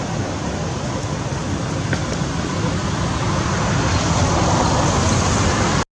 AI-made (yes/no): no